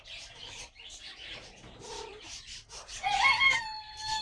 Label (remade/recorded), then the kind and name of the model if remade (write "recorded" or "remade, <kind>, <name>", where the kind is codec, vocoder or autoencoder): remade, vocoder, BigVGAN v2